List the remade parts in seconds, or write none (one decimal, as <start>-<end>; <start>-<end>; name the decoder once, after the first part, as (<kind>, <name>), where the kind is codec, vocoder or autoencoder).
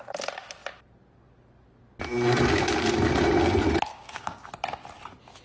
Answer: 3.9-4.5 (codec, DAC)